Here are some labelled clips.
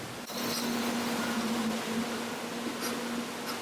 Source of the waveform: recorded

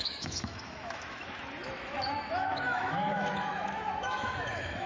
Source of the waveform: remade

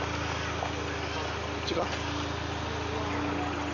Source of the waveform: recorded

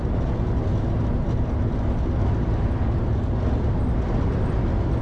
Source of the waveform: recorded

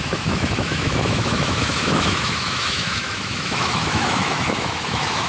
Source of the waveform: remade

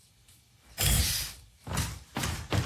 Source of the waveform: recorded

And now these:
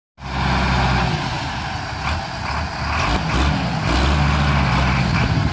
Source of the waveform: recorded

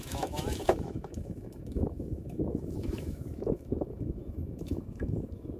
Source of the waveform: remade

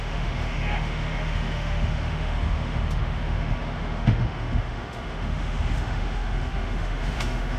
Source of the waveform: remade